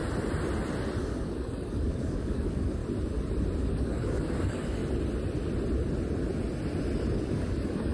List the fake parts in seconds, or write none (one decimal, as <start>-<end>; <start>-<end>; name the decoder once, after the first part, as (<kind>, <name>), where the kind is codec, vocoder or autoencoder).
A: 1.0-2.8 (codec, DAC); 3.6-4.8; 7.2-7.9